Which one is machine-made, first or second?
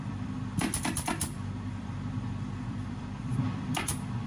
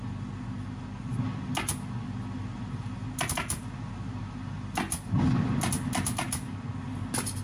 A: first